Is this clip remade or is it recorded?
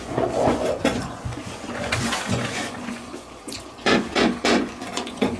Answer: remade